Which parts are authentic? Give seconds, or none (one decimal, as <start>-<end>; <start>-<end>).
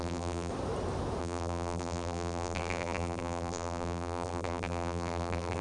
0.5-1.2